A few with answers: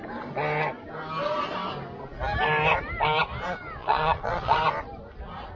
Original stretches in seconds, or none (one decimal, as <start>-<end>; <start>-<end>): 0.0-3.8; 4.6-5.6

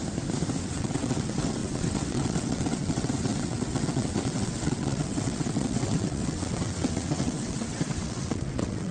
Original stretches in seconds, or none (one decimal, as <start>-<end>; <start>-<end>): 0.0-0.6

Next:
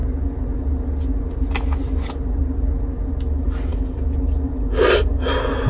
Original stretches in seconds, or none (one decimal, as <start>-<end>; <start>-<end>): 0.0-5.7